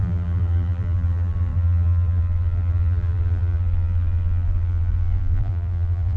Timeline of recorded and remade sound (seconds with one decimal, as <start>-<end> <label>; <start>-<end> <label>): 0.0-6.2 remade